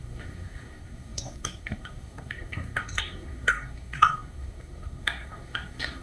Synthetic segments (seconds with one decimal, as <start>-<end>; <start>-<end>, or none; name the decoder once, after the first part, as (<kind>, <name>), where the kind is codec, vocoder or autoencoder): 0.0-6.0 (codec, SNAC)